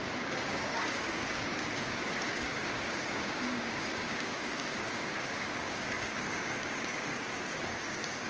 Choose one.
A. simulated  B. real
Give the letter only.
A